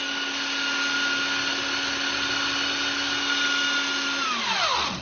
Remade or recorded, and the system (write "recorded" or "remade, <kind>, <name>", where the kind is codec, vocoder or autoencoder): recorded